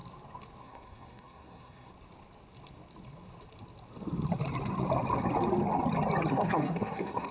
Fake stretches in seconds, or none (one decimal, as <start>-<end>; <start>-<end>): 0.6-1.9; 6.3-7.3